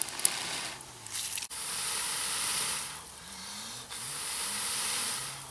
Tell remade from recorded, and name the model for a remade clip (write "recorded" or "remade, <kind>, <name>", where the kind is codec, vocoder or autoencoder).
recorded